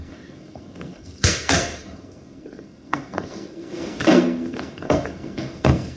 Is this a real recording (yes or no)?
no